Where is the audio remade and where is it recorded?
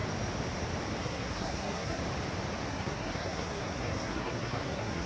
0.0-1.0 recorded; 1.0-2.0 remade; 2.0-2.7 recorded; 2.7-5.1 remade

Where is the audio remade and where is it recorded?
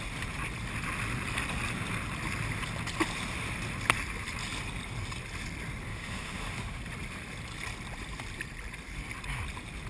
0.0-5.9 recorded; 5.9-6.8 remade; 6.8-9.9 recorded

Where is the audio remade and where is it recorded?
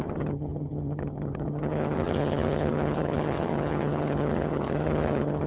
0.0-5.5 remade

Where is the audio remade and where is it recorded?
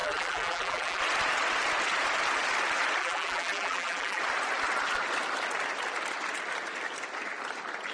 0.0-1.0 remade; 1.0-3.0 recorded; 3.0-4.2 remade; 4.2-7.9 recorded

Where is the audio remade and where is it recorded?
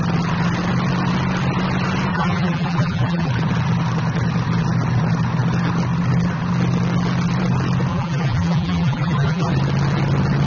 0.0-2.1 recorded; 2.1-3.3 remade; 3.3-7.9 recorded; 7.9-9.5 remade; 9.5-10.5 recorded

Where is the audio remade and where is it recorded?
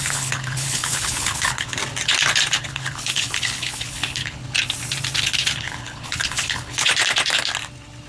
0.0-1.8 remade; 1.8-2.6 recorded; 2.6-4.4 remade; 4.4-5.2 recorded; 5.2-6.9 remade; 6.9-8.1 recorded